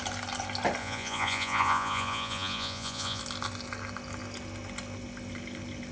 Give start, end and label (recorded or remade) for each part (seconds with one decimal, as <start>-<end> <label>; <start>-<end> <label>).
0.0-0.8 recorded; 0.8-3.2 remade; 3.2-5.9 recorded